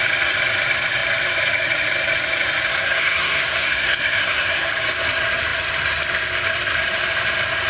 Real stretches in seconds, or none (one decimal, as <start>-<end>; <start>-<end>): 0.0-2.7; 4.7-7.7

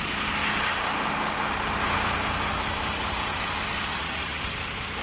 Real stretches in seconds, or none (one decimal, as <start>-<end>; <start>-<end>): 0.0-3.9; 4.4-5.0

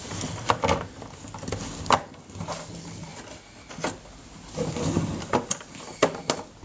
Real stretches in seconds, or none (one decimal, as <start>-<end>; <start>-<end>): 0.0-6.6